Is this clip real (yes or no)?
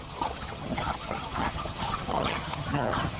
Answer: no